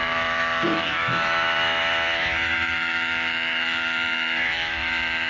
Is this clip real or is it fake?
fake